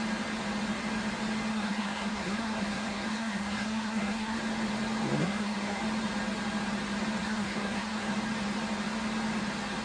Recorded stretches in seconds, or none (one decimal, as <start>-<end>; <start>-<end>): 0.0-1.5; 4.4-5.2; 5.8-7.2; 8.1-9.8